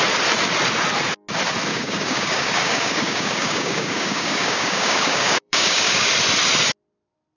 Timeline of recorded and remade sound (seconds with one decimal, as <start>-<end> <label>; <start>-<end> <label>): 0.0-1.7 recorded; 1.7-6.1 remade; 6.1-7.4 recorded